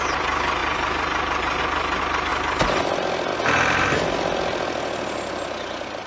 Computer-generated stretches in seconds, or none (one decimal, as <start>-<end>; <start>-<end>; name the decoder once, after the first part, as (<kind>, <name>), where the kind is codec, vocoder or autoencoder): 0.6-1.6 (vocoder, BigVGAN v2)